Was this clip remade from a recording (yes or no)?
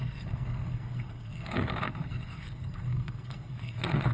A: yes